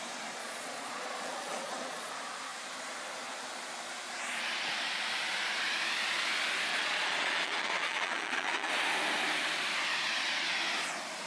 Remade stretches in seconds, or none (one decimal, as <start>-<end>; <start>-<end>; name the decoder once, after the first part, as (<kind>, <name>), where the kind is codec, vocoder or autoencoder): 0.4-2.1 (vocoder, Vocos); 6.7-8.7

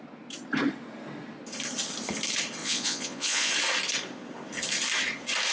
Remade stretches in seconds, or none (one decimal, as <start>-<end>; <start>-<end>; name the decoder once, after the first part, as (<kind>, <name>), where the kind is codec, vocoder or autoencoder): 2.6-3.5 (vocoder, Vocos)

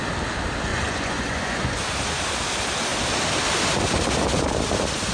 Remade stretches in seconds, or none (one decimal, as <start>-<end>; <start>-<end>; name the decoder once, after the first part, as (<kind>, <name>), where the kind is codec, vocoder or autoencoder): 0.7-1.8 (vocoder, Vocos)

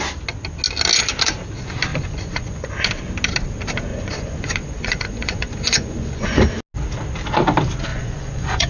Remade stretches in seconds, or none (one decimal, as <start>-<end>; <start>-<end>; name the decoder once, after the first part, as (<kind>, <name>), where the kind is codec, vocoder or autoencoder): 1.9-2.7 (vocoder, Vocos); 3.9-6.5; 7.9-8.7

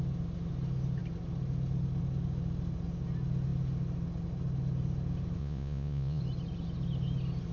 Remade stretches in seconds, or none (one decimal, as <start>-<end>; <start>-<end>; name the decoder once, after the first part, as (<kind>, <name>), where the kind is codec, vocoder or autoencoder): 5.4-6.2 (vocoder, Vocos)

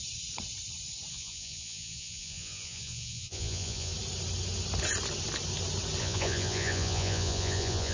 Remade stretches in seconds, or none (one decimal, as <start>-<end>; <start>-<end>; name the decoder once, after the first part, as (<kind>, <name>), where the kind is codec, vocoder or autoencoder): 1.1-3.9 (vocoder, Vocos); 6.0-7.9

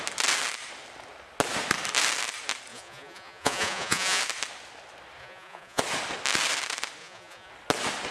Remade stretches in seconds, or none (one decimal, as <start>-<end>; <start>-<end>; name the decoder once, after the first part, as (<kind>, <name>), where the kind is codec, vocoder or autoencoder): 2.7-4.2 (vocoder, Vocos); 5.2-5.8; 7.0-7.5